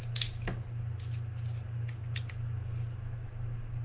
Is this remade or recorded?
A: recorded